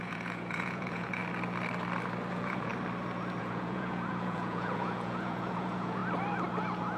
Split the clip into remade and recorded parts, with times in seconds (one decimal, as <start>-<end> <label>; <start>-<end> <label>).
0.0-1.2 remade; 1.2-2.3 recorded; 2.3-2.7 remade; 2.7-3.4 recorded; 3.4-6.0 remade; 6.0-7.0 recorded